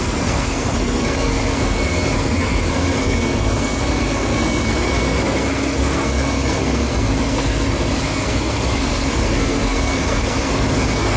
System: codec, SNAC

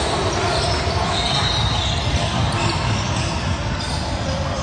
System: none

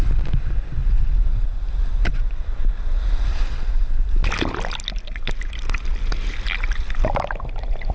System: none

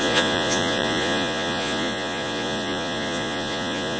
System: vocoder, Vocos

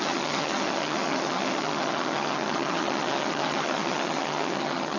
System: vocoder, HiFi-GAN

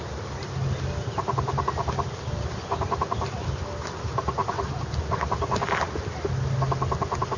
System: none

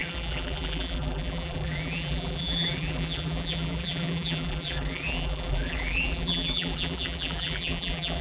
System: vocoder, BigVGAN v2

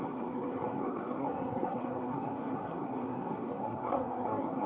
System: codec, SNAC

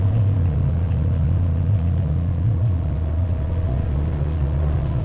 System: vocoder, Vocos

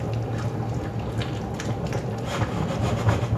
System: none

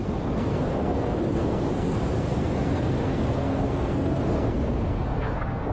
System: codec, SNAC